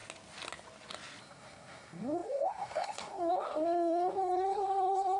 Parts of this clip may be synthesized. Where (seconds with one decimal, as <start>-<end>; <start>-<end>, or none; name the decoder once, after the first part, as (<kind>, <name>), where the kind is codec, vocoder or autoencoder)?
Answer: 1.2-5.2 (codec, SNAC)